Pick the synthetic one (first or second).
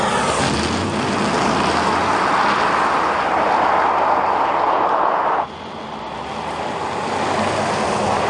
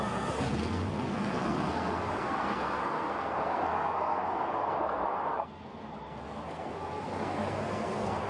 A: second